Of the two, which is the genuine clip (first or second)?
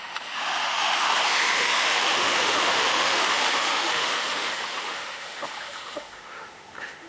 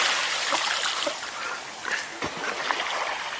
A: second